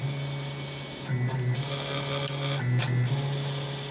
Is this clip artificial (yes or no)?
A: no